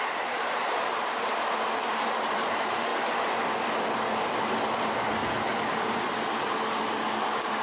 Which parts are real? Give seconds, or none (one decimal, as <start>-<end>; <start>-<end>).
1.3-2.0; 2.9-7.6

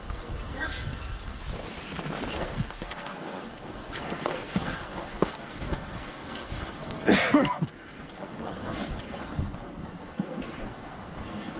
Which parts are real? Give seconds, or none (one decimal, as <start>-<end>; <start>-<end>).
1.4-2.3

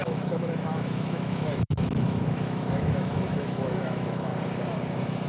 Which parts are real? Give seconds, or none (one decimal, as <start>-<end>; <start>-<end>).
4.3-5.3

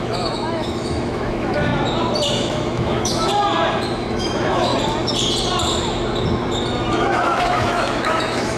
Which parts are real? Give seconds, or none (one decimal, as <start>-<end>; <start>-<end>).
1.7-2.3; 3.3-3.8; 4.7-6.9

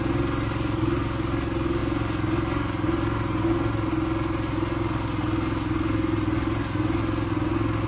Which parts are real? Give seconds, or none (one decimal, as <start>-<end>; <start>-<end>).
0.0-7.9

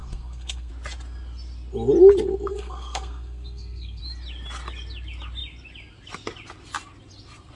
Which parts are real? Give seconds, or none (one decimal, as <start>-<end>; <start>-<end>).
0.7-2.5; 4.0-7.6